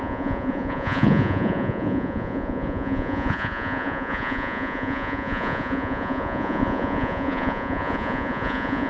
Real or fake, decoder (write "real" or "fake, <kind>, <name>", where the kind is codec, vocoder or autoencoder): fake, vocoder, Vocos